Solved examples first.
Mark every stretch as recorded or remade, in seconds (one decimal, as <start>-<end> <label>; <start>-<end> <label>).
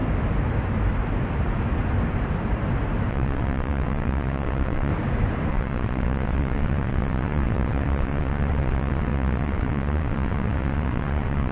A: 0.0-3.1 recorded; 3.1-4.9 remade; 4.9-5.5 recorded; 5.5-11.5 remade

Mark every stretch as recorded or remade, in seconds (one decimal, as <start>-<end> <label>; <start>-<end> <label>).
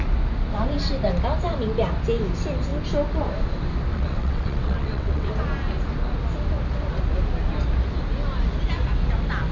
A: 0.0-3.9 recorded; 3.9-5.3 remade; 5.3-9.5 recorded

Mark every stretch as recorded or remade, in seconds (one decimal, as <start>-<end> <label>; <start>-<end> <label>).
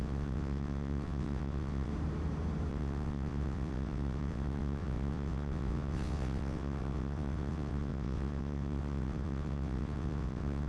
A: 0.0-1.9 remade; 1.9-2.7 recorded; 2.7-10.7 remade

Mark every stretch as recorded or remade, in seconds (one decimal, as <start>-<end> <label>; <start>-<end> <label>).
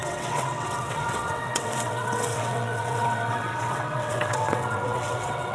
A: 0.0-5.5 remade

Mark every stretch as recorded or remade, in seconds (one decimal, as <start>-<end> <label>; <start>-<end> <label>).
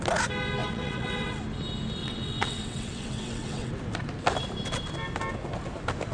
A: 0.0-0.6 recorded; 0.6-1.4 remade; 1.4-2.0 recorded; 2.0-3.7 remade; 3.7-6.1 recorded